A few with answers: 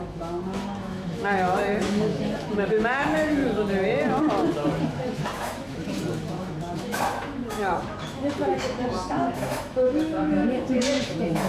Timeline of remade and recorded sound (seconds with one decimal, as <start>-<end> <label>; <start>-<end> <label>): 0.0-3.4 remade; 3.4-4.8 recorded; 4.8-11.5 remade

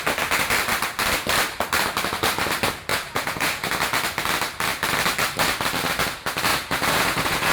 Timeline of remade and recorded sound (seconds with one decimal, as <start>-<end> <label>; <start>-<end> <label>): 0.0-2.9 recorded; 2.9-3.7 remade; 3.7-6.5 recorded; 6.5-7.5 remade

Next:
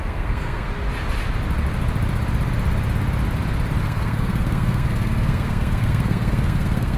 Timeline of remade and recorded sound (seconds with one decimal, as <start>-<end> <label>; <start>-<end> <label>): 0.0-0.7 remade; 0.7-3.8 recorded; 3.8-7.0 remade

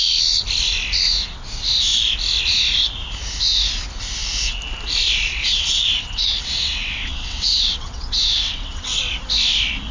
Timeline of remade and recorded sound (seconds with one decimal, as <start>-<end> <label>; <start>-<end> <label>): 0.0-5.4 recorded; 5.4-9.0 remade; 9.0-9.9 recorded

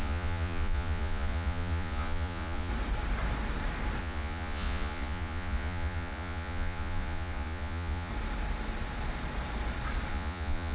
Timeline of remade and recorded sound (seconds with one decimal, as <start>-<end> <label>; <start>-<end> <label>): 0.0-2.7 remade; 2.7-4.0 recorded; 4.0-8.1 remade; 8.1-10.1 recorded; 10.1-10.7 remade

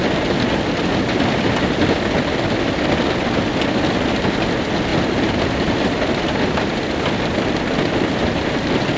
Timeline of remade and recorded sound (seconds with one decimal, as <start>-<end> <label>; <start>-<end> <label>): 0.0-9.0 recorded

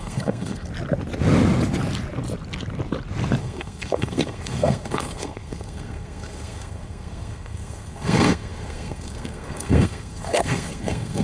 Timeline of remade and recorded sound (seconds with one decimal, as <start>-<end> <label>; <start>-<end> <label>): 0.0-0.7 remade; 0.7-3.4 recorded; 3.4-11.2 remade

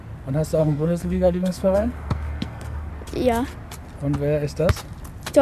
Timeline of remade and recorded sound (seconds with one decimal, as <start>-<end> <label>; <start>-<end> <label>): 0.0-0.6 recorded; 0.6-2.9 remade; 2.9-5.4 recorded